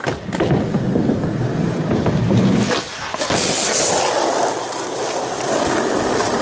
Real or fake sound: real